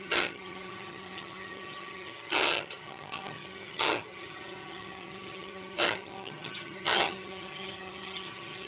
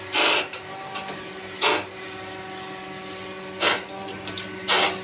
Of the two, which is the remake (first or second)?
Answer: first